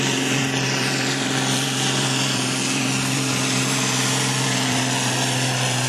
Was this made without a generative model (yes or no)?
no